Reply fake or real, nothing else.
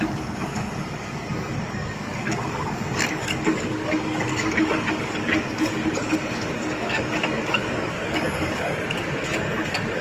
fake